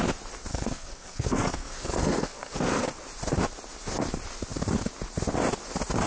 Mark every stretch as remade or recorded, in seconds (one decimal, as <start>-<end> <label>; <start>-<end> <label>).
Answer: 0.0-0.5 recorded; 0.5-2.9 remade; 2.9-6.1 recorded